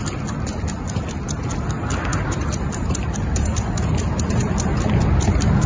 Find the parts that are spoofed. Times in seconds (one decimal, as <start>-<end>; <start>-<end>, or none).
2.1-5.7